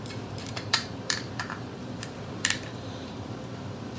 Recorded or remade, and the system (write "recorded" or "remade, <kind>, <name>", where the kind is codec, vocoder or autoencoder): remade, vocoder, BigVGAN v2